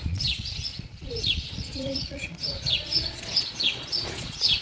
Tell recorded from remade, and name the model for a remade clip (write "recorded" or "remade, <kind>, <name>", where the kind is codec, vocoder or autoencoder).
remade, vocoder, Vocos